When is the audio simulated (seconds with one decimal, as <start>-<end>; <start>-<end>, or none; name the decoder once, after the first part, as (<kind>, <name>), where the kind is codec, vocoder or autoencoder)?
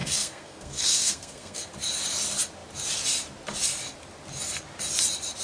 0.0-1.7 (codec, SNAC)